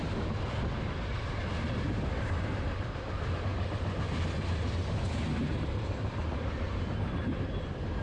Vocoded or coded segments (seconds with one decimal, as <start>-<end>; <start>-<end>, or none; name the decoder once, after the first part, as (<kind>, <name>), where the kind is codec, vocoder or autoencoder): 0.8-3.5 (vocoder, BigVGAN v2); 5.2-8.0